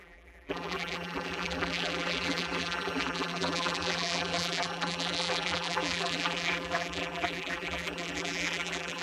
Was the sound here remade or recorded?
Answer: remade